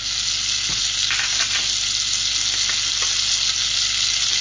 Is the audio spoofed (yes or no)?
no